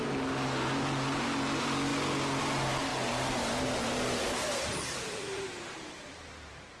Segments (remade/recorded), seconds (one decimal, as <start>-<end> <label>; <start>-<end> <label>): 0.0-2.9 recorded; 2.9-6.8 remade